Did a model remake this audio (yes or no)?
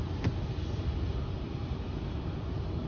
no